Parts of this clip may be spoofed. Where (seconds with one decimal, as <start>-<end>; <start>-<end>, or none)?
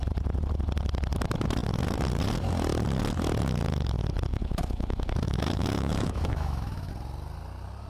4.3-6.9